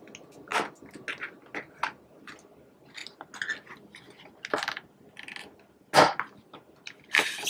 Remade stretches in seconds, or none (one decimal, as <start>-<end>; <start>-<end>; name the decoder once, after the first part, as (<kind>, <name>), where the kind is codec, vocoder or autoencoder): none